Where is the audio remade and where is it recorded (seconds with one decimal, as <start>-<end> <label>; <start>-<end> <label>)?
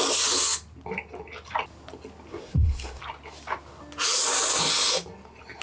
0.0-2.3 recorded; 2.3-3.0 remade; 3.0-5.6 recorded